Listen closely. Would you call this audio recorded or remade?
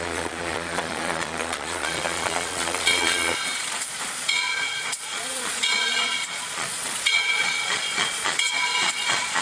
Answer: remade